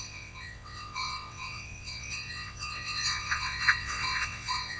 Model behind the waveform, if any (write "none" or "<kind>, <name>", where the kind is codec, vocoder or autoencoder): vocoder, WaveNeXt